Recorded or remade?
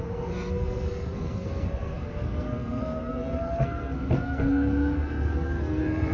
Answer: remade